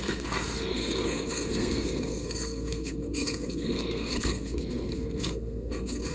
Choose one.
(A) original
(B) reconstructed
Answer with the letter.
B